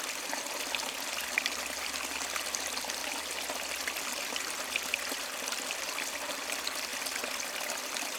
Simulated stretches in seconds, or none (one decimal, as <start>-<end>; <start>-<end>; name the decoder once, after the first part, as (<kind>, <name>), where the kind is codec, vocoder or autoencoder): none

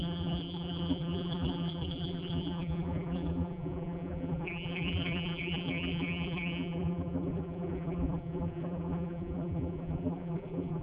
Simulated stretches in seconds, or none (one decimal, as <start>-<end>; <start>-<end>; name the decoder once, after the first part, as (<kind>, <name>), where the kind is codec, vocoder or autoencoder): 0.0-10.8 (vocoder, BigVGAN v2)

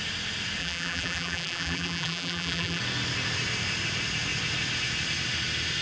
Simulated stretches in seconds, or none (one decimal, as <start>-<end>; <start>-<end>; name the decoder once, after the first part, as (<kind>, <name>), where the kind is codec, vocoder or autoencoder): 0.6-2.8 (vocoder, BigVGAN v2)

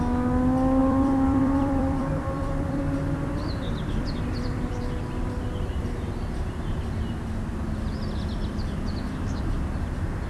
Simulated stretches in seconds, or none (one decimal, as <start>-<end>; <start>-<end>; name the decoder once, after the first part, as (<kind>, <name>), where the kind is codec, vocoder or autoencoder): 0.8-4.7 (vocoder, BigVGAN v2)

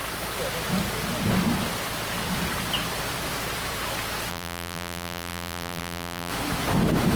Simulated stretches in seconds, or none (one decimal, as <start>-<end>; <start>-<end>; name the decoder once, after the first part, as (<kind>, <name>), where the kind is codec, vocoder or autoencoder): 4.3-6.3 (vocoder, BigVGAN v2)

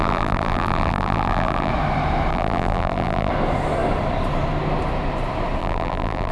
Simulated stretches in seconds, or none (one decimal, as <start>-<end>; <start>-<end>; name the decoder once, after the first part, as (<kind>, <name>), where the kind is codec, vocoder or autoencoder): 0.0-1.7 (vocoder, BigVGAN v2); 2.3-3.3; 5.6-6.3

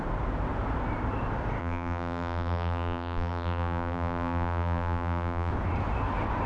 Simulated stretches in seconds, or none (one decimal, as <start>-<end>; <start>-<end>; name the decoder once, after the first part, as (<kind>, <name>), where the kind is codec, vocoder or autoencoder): 1.6-5.5 (vocoder, BigVGAN v2)